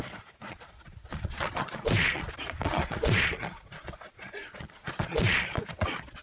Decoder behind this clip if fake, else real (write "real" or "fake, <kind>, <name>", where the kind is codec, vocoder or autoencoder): fake, vocoder, Vocos